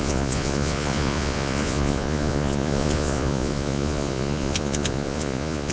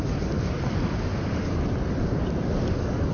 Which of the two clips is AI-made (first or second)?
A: first